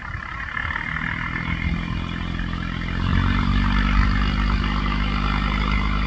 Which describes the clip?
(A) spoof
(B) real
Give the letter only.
B